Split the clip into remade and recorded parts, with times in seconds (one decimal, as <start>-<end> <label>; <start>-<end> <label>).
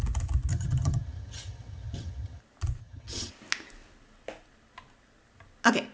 0.0-0.5 recorded; 0.5-2.4 remade; 2.4-2.8 recorded; 2.8-3.3 remade; 3.3-5.9 recorded